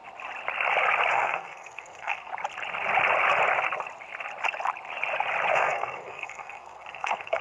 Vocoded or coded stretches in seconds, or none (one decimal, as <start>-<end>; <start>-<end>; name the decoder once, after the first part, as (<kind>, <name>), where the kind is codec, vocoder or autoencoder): 1.1-2.3 (codec, SNAC); 5.5-7.4